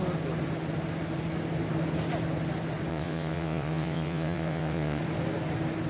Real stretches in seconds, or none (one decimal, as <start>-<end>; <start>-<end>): 0.0-2.9; 5.0-5.9